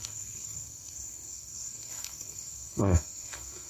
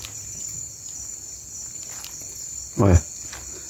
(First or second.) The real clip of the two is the second